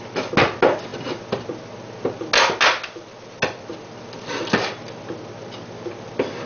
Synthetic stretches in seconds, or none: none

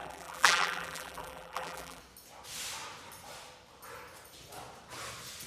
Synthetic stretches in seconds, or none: 0.0-2.0 (vocoder, BigVGAN v2)

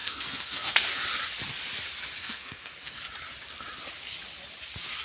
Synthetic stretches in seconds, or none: 0.0-1.0 (codec, SNAC); 2.2-3.0

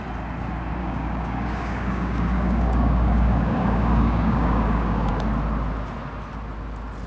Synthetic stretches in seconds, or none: 0.8-5.1 (codec, DAC)